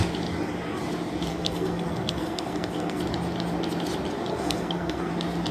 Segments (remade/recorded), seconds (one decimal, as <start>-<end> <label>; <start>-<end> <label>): 0.0-1.3 recorded; 1.3-3.0 remade; 3.0-4.3 recorded; 4.3-5.1 remade; 5.1-5.5 recorded